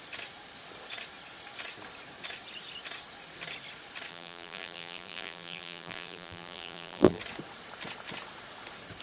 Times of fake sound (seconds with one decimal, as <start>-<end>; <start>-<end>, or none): 4.1-7.2